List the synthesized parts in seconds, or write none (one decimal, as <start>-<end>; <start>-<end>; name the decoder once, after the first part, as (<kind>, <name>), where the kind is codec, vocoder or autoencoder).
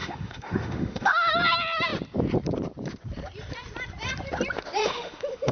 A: 0.0-1.3 (autoencoder, DAC-VAE); 4.8-5.5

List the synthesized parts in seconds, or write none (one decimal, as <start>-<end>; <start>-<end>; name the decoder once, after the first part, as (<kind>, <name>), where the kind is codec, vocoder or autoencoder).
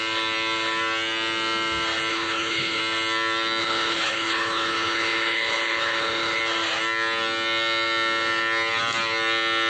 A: 2.1-2.8 (codec, HILCodec); 3.6-6.4